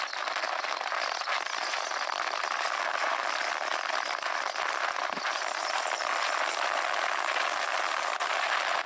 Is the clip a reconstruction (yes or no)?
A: no